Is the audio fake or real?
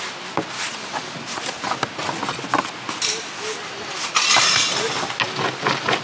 real